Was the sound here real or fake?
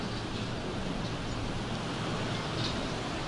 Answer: real